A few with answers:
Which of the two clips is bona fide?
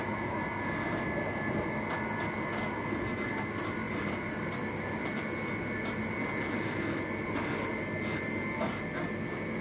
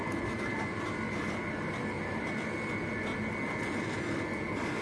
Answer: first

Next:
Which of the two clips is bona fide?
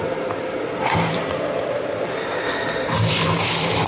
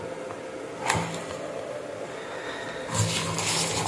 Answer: second